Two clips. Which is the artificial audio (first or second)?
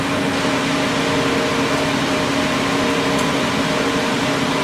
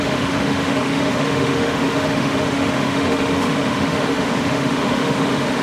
second